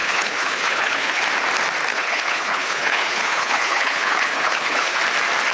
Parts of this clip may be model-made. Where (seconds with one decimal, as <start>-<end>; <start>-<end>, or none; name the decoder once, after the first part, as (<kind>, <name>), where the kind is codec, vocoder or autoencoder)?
0.0-1.2 (codec, HILCodec); 1.9-5.0